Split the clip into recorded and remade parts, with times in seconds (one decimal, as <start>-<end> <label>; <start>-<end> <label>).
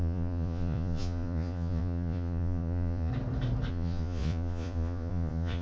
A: 0.0-3.1 remade; 3.1-3.7 recorded; 3.7-5.6 remade